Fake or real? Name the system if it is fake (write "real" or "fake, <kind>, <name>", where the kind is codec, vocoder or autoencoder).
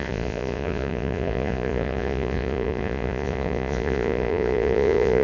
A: fake, vocoder, Vocos